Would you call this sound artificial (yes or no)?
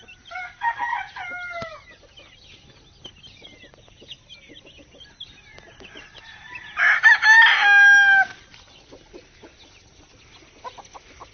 no